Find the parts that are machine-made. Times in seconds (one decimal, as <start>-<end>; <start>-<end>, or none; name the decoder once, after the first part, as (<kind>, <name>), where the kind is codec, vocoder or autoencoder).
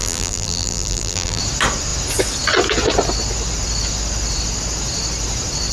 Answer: 0.0-1.4 (vocoder, BigVGAN v2)